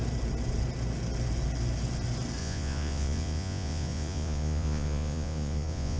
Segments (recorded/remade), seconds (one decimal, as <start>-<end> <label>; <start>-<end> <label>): 0.0-2.4 recorded; 2.4-6.0 remade